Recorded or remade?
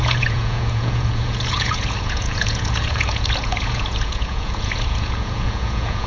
remade